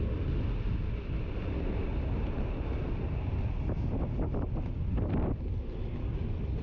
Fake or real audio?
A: real